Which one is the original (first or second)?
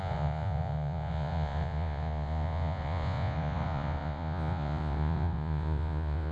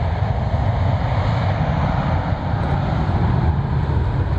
second